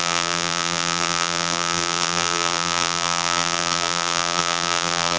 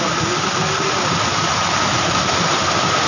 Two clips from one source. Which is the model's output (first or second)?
first